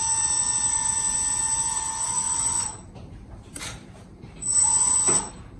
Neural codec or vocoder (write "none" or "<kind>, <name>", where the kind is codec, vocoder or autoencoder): vocoder, BigVGAN v2